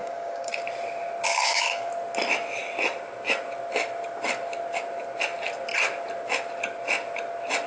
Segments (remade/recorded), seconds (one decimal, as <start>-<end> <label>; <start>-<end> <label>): 0.0-0.6 remade; 0.6-1.3 recorded; 1.3-1.9 remade; 1.9-7.7 recorded